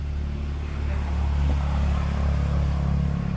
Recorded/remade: recorded